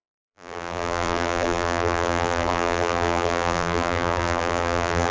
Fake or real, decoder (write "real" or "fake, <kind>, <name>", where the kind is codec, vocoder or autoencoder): fake, vocoder, BigVGAN v2